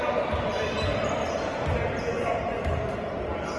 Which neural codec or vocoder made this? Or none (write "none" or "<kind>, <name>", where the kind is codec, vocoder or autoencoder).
none